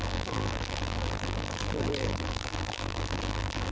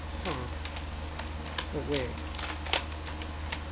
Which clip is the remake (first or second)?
first